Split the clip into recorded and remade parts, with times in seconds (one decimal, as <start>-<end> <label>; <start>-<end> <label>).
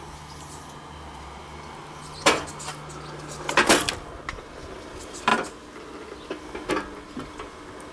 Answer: 0.0-7.9 recorded